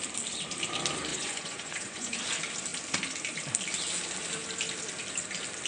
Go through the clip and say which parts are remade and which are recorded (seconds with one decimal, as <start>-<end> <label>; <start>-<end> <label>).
0.0-1.1 recorded; 1.1-2.2 remade; 2.2-5.7 recorded